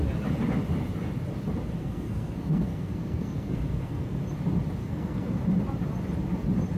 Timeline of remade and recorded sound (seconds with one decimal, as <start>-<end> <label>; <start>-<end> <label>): 0.0-1.8 recorded; 1.8-4.2 remade; 4.2-4.8 recorded; 4.8-5.4 remade; 5.4-6.8 recorded